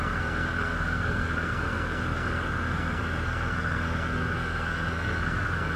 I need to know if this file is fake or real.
fake